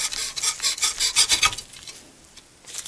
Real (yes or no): yes